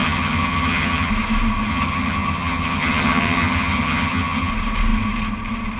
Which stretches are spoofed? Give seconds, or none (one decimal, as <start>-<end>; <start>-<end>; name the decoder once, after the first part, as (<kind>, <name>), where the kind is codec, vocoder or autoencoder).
0.0-1.1 (vocoder, HiFi-GAN); 1.7-4.5

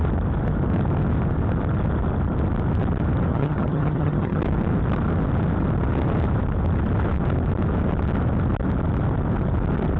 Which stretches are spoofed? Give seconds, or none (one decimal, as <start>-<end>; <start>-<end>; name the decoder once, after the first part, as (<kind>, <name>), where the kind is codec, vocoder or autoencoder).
3.3-4.4 (vocoder, HiFi-GAN)

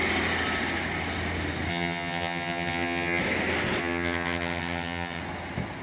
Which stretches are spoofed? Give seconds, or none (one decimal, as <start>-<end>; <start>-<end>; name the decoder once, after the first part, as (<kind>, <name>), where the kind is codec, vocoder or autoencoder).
1.7-3.2 (vocoder, HiFi-GAN); 3.8-5.2

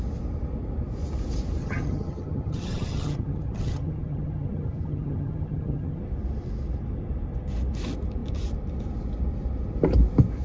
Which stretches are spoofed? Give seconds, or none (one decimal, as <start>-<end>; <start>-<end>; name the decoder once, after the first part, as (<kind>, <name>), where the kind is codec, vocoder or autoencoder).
1.6-6.0 (vocoder, HiFi-GAN)

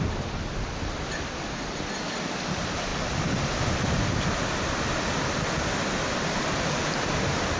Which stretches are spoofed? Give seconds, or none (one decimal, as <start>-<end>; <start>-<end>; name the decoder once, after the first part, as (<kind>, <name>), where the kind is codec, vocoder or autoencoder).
none

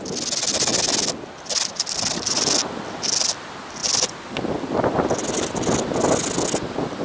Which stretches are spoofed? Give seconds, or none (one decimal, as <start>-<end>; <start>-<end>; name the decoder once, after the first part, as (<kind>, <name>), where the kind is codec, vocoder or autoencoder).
none